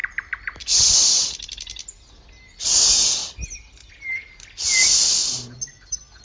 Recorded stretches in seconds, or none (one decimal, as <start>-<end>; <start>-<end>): 0.8-5.2